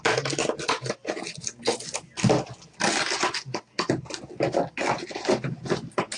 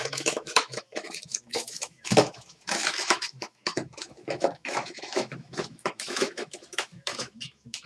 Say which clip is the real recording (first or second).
first